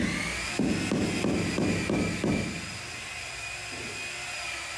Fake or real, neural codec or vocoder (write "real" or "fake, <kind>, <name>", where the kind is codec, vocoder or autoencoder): real